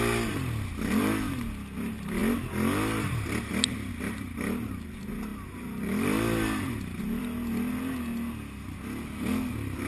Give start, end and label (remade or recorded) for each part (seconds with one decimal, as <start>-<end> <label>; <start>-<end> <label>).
0.0-9.9 recorded